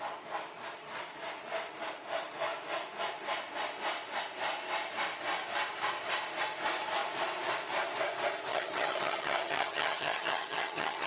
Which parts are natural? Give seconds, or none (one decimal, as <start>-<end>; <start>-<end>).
0.0-8.5